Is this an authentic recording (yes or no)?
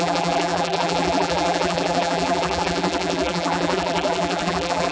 no